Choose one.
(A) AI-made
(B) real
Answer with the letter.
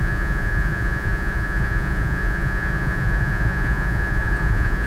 A